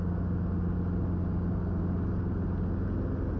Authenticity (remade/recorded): recorded